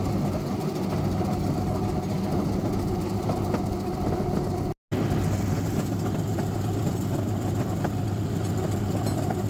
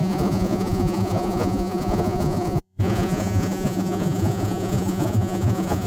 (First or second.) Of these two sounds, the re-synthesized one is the second